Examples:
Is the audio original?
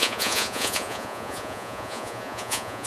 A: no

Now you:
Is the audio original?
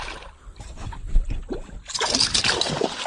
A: yes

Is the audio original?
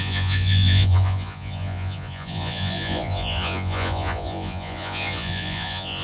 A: no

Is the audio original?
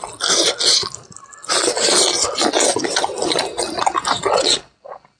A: yes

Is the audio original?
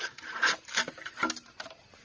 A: yes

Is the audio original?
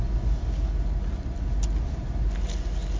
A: yes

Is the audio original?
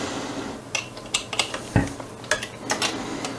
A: yes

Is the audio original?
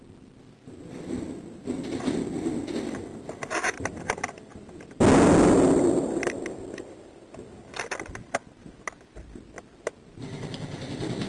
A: yes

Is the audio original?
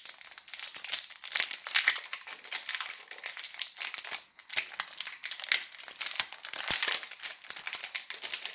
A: yes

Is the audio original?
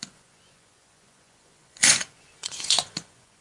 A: no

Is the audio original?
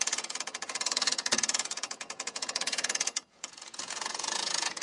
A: no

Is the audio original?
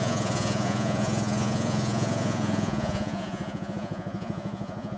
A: no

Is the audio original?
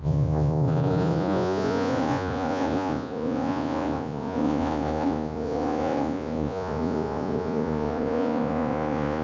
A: no